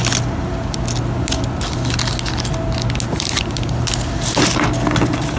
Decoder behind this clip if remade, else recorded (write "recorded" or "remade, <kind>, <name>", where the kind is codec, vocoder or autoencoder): recorded